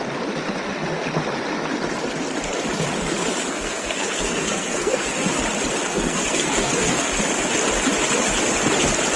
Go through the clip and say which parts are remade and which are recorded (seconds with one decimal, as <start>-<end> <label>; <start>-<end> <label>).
0.0-3.5 recorded; 3.5-5.4 remade; 5.4-5.9 recorded; 5.9-7.1 remade; 7.1-9.2 recorded